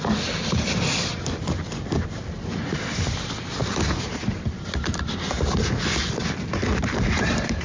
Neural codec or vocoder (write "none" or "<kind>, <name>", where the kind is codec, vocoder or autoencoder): none